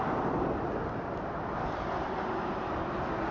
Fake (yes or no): no